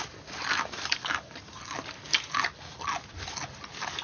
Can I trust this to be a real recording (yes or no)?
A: yes